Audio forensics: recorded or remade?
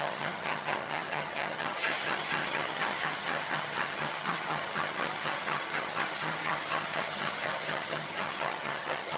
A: remade